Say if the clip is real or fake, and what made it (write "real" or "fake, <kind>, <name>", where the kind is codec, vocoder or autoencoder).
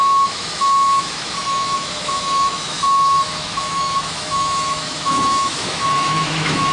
fake, autoencoder, DAC-VAE